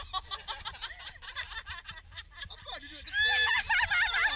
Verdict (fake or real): real